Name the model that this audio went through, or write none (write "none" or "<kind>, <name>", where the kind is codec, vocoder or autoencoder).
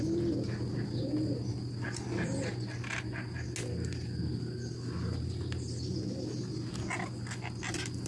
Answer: none